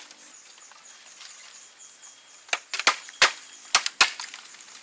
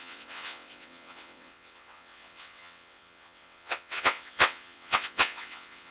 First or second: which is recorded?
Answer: first